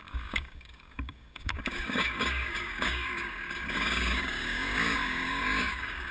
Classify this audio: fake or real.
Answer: fake